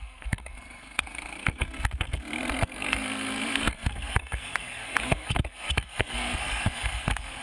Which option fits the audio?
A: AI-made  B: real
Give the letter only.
A